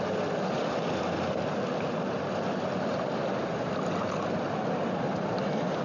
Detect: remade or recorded recorded